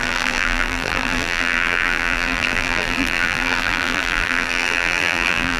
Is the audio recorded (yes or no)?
no